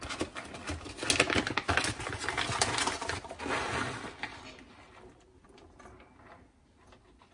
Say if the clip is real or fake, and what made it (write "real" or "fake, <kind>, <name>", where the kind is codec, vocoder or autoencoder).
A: real